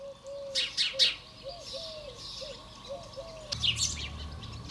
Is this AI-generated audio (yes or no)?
no